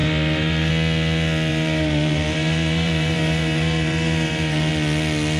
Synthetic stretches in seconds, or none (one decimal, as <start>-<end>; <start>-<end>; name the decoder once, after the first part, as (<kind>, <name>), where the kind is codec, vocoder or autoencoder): 0.0-0.7 (vocoder, BigVGAN v2); 1.5-4.7